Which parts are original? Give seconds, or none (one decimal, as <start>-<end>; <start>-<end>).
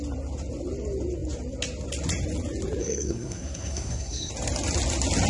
0.0-2.8; 4.3-5.3